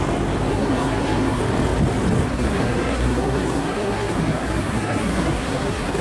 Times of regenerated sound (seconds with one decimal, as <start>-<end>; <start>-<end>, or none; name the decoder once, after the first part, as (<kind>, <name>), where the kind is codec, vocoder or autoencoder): 0.5-1.4 (codec, SNAC); 2.3-6.0